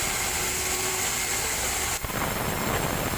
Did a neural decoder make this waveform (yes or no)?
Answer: no